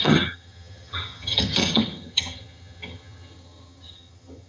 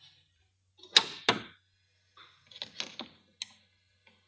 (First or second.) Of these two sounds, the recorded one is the second